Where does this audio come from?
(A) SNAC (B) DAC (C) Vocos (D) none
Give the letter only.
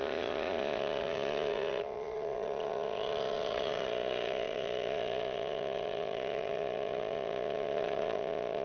C